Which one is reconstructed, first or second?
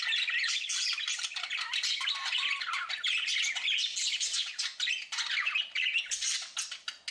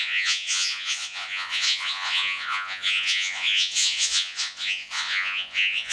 second